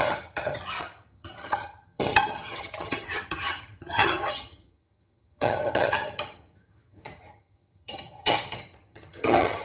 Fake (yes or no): yes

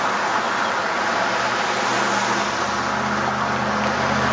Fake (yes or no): no